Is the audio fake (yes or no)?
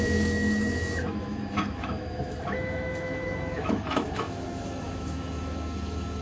yes